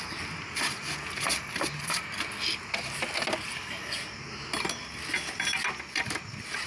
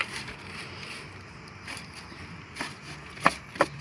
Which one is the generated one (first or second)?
second